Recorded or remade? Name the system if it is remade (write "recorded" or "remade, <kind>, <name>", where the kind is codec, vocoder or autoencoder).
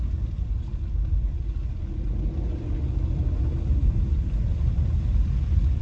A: recorded